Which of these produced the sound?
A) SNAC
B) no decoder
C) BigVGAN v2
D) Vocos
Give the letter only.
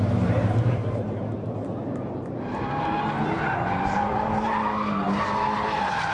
B